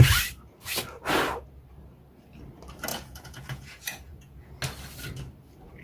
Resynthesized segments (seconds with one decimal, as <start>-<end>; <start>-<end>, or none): 2.9-4.6